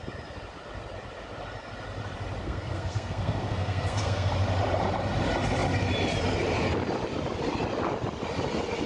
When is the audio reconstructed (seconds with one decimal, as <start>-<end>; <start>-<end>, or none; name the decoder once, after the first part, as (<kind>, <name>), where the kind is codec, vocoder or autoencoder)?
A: 2.4-4.3 (codec, SNAC)